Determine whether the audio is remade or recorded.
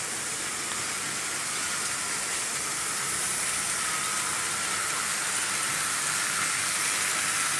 recorded